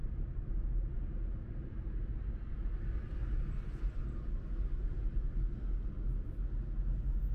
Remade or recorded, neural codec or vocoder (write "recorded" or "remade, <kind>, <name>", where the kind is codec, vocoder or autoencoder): recorded